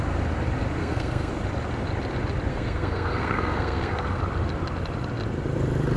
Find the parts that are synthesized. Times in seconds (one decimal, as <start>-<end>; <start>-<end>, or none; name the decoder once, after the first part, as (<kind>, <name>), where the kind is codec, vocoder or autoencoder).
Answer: 0.8-1.3 (codec, SNAC); 2.5-4.2